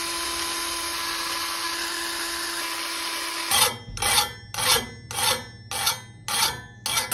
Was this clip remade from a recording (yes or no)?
no